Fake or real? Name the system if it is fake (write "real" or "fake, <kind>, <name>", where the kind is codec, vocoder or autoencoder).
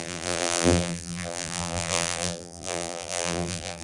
fake, vocoder, BigVGAN v2